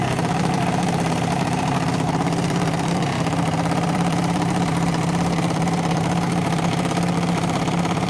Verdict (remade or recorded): remade